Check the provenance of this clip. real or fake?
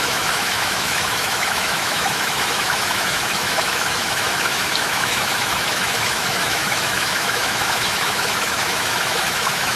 fake